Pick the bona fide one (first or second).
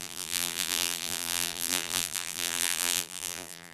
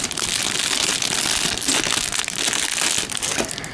second